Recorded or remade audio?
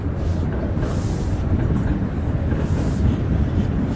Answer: recorded